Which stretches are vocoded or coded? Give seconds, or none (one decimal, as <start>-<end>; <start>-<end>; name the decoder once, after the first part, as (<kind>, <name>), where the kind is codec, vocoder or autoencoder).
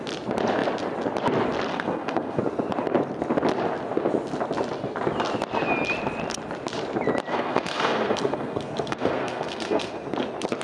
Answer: 1.7-2.4 (codec, SNAC); 7.3-9.9